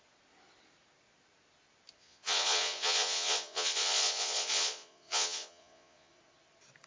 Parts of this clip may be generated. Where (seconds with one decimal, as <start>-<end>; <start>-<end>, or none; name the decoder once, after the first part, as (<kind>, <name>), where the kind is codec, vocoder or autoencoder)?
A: 2.0-6.1 (vocoder, Vocos)